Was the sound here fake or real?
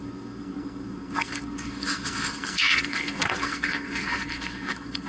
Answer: fake